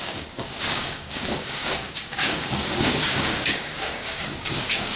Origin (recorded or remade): remade